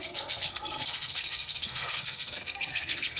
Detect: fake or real fake